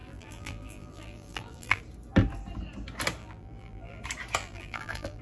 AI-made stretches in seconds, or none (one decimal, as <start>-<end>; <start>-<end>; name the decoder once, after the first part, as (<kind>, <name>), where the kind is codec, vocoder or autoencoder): 0.0-1.8 (vocoder, BigVGAN v2); 3.2-4.0; 4.4-5.2